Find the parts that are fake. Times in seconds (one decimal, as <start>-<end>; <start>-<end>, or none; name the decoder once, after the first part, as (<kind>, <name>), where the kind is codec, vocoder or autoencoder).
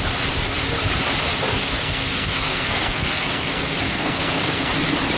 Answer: 1.6-4.7 (codec, SNAC)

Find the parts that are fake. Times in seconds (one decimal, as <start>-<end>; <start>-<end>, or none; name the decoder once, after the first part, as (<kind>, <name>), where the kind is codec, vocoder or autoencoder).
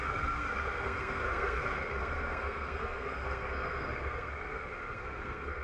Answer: 0.0-5.6 (codec, SNAC)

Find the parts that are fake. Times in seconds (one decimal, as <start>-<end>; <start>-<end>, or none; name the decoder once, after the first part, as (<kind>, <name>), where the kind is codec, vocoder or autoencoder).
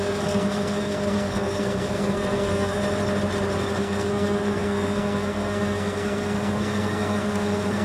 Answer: 0.0-2.8 (codec, SNAC); 3.8-7.8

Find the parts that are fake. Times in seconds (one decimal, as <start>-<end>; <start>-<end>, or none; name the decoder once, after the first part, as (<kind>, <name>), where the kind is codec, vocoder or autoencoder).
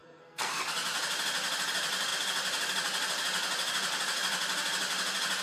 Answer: 0.0-0.6 (codec, SNAC)